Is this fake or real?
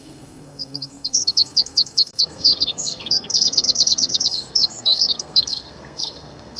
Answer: fake